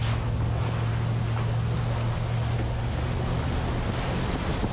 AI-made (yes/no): no